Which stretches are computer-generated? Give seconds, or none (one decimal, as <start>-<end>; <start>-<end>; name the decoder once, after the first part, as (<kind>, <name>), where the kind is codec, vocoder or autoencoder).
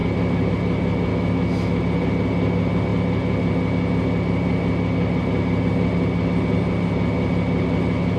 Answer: 1.1-1.8 (autoencoder, DAC-VAE)